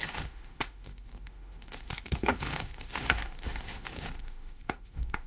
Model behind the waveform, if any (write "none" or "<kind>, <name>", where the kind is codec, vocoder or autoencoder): autoencoder, DAC-VAE